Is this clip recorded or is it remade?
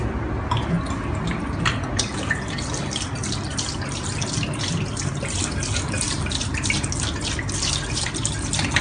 recorded